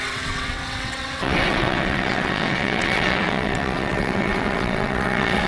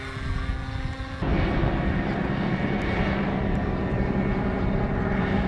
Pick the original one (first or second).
second